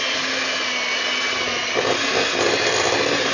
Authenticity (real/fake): real